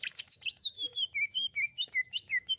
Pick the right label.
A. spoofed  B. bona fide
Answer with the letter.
A